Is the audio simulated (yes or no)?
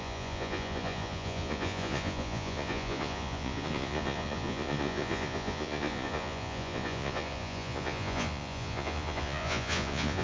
yes